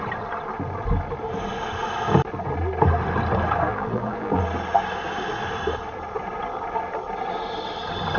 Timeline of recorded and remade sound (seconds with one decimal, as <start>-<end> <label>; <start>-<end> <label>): 0.0-3.7 recorded; 3.7-4.4 remade; 4.4-8.2 recorded